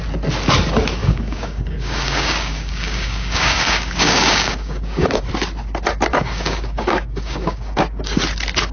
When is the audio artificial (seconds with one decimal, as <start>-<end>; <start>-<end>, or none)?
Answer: 1.0-5.2; 6.1-8.2